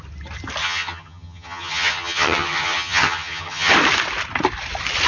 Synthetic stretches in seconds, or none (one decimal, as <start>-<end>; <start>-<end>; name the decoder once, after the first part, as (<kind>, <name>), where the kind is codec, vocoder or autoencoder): 0.6-3.7 (vocoder, HiFi-GAN)